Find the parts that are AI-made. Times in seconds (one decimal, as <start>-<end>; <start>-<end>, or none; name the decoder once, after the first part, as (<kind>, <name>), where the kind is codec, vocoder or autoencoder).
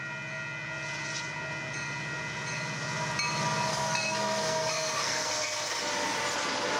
3.7-5.9 (codec, SNAC)